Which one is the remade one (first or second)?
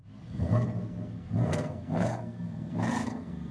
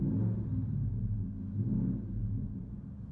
first